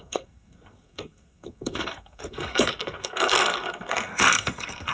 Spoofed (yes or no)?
yes